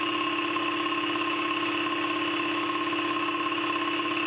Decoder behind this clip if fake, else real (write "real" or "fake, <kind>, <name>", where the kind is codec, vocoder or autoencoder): real